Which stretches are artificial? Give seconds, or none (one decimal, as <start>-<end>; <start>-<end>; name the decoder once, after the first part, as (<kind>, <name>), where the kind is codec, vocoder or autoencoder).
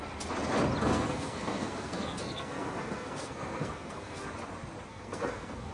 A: 0.8-4.2 (codec, SNAC); 4.9-5.7